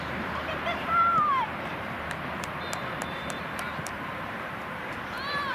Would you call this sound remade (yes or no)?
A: yes